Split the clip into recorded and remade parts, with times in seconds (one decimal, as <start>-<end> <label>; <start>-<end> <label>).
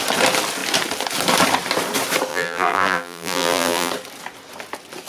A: 0.0-2.3 recorded; 2.3-3.9 remade; 3.9-5.1 recorded